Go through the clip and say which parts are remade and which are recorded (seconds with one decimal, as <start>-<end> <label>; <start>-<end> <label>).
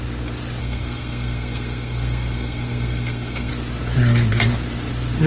0.0-0.6 recorded; 0.6-3.5 remade; 3.5-5.3 recorded